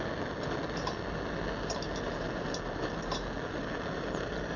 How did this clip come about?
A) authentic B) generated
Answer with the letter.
A